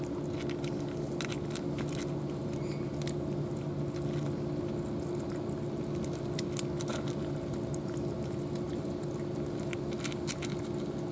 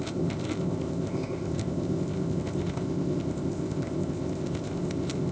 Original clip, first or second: first